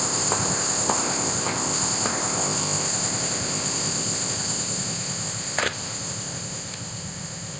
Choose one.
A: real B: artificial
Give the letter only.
B